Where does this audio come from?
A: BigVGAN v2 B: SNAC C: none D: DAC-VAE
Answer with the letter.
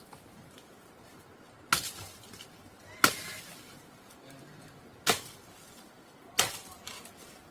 C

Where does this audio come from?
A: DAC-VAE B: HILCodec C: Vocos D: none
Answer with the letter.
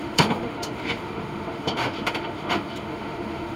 A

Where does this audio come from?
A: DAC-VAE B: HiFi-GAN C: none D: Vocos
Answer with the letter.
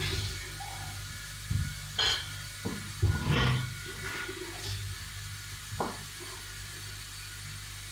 C